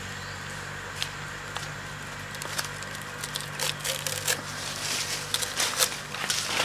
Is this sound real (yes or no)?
yes